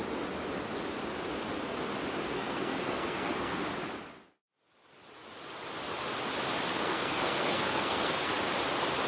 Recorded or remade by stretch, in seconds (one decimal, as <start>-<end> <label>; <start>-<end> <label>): 0.0-2.3 recorded; 2.3-3.6 remade; 3.6-6.7 recorded; 6.7-8.3 remade; 8.3-9.1 recorded

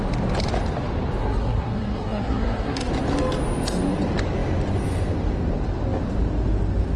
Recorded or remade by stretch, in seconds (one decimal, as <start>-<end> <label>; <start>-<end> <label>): 0.0-1.2 recorded; 1.2-2.9 remade; 2.9-7.0 recorded

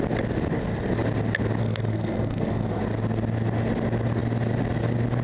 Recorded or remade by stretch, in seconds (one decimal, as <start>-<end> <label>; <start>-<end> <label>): 0.0-1.6 recorded; 1.6-2.8 remade; 2.8-5.2 recorded

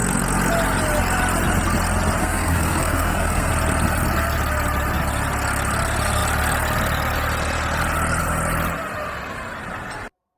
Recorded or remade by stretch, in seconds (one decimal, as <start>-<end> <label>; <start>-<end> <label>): 0.0-2.2 recorded; 2.2-3.5 remade; 3.5-10.4 recorded

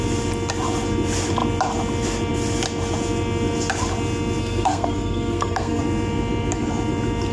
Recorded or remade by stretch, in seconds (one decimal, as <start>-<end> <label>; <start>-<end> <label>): 0.0-4.4 recorded; 4.4-5.8 remade; 5.8-7.3 recorded